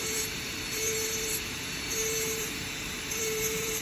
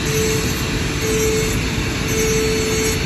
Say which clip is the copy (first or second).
first